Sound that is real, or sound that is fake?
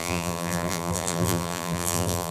fake